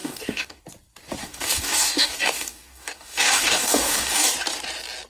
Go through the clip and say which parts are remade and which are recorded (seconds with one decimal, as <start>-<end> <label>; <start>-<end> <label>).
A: 0.0-0.6 remade; 0.6-1.2 recorded; 1.2-4.3 remade; 4.3-5.1 recorded